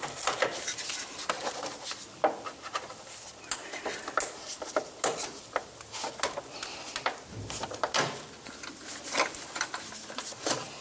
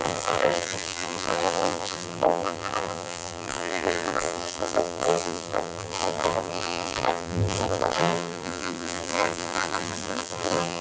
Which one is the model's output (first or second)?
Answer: second